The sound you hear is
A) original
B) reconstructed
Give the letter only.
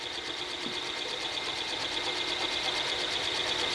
A